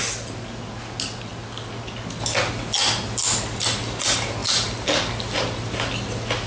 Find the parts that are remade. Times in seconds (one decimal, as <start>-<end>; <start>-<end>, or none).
none